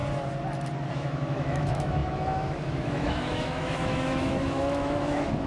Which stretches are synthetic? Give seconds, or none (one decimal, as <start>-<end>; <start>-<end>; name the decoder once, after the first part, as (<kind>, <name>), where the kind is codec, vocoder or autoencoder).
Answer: 0.9-5.5 (autoencoder, DAC-VAE)